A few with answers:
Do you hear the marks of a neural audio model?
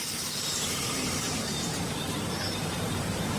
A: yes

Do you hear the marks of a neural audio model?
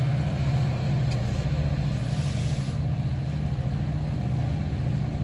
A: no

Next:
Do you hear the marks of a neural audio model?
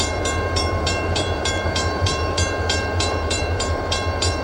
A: yes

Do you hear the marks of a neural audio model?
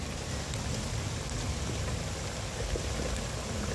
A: no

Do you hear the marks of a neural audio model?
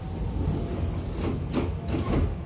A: no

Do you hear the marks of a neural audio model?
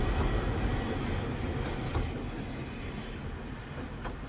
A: no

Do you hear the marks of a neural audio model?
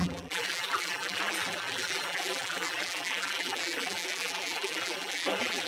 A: yes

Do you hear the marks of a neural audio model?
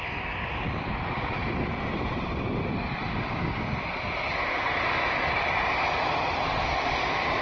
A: no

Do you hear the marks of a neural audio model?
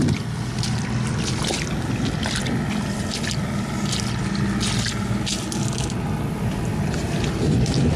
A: no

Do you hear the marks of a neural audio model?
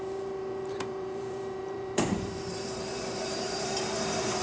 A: yes